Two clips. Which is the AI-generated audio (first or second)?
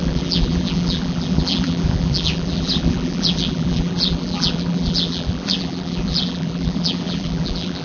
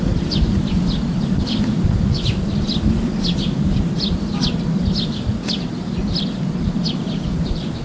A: first